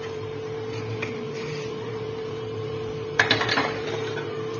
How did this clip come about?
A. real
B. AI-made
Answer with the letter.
B